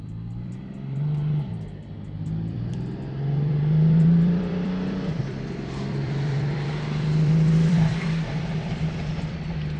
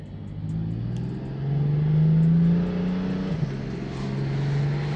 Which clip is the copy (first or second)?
first